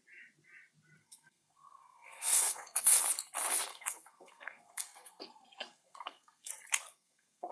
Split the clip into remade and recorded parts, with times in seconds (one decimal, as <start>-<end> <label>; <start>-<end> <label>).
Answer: 0.0-1.0 recorded; 1.0-3.0 remade; 3.0-3.7 recorded; 3.7-6.5 remade; 6.5-6.9 recorded; 6.9-7.5 remade